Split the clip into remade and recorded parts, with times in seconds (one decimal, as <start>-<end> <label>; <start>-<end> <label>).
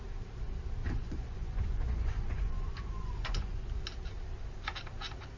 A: 0.0-0.8 recorded; 0.8-3.7 remade; 3.7-5.4 recorded